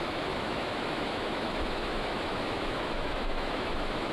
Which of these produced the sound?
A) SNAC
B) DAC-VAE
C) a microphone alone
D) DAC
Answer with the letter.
B